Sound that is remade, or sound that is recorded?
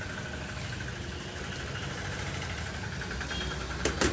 recorded